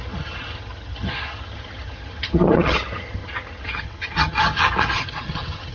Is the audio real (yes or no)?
no